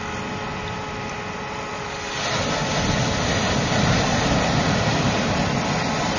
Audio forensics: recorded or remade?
recorded